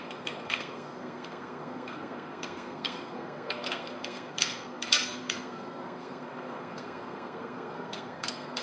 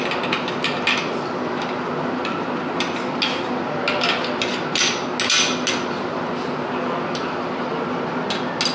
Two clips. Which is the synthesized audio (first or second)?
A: first